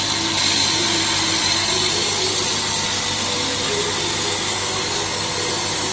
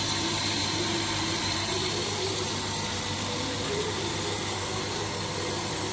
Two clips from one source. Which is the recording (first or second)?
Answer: first